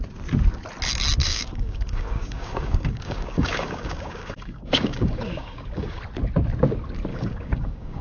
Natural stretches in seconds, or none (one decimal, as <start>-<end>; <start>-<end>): 0.0-1.2; 6.0-7.1